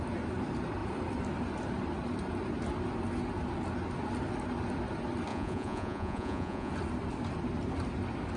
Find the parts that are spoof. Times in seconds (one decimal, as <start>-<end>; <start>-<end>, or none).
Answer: 5.3-6.7